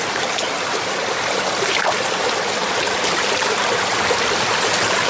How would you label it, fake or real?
real